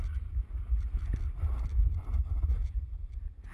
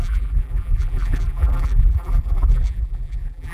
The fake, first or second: second